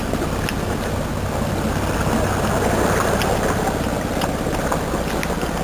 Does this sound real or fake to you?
real